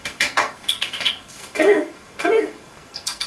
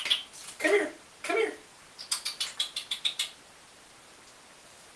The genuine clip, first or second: second